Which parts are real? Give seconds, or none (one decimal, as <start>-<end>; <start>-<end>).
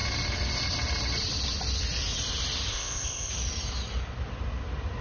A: 0.0-2.7; 3.3-5.0